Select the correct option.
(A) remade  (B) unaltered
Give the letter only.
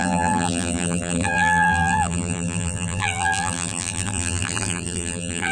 A